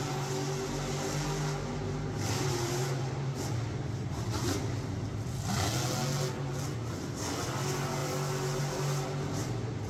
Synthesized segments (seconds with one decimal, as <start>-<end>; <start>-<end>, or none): none